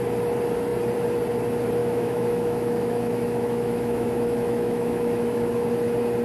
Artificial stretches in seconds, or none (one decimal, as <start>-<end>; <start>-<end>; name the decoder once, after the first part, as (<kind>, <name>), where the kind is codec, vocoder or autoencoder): 1.8-5.5 (autoencoder, DAC-VAE)